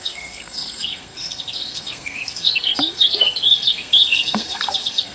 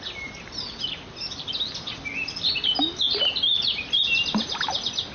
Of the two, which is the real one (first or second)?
second